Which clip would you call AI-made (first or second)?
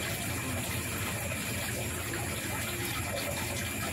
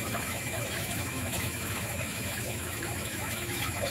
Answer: second